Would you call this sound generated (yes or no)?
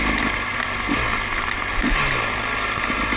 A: no